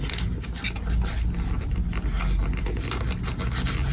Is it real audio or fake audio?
real